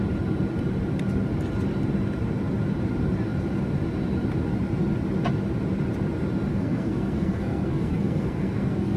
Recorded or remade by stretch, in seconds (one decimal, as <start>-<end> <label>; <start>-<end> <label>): 0.0-6.5 recorded; 6.5-9.0 remade